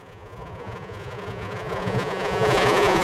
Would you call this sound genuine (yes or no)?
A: no